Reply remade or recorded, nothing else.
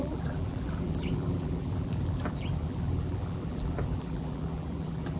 remade